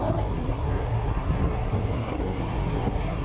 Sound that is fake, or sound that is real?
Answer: fake